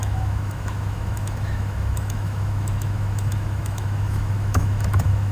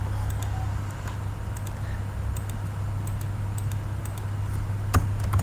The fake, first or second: first